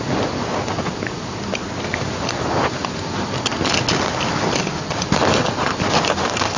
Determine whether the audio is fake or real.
real